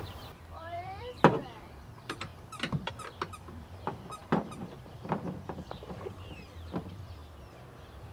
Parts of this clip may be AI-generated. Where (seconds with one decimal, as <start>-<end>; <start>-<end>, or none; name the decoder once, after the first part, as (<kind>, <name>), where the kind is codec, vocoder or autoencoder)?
0.0-7.2 (vocoder, BigVGAN v2)